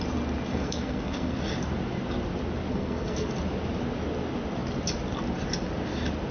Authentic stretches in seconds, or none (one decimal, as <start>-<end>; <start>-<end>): 0.0-0.5; 1.4-2.7; 3.3-6.3

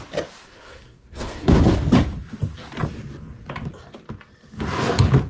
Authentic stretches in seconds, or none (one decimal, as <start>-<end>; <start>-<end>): 0.0-0.4; 1.5-5.3

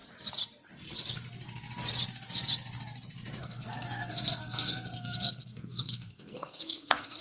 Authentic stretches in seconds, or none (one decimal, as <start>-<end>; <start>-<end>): 0.0-3.4

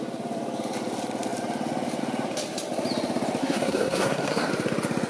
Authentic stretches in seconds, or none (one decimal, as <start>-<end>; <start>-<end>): 0.0-3.4; 4.5-5.1